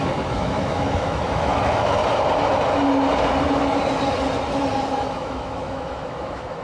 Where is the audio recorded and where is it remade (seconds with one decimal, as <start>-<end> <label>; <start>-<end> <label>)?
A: 0.0-2.0 remade; 2.0-5.1 recorded; 5.1-6.6 remade